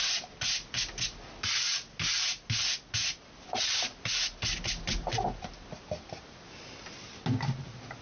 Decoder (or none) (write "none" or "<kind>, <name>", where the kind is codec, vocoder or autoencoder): none